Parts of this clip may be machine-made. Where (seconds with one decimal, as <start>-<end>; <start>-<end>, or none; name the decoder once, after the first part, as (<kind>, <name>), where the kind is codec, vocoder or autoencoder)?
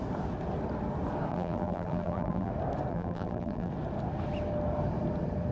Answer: 1.3-2.5 (vocoder, BigVGAN v2); 2.9-3.7